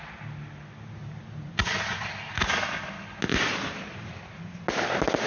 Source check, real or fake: real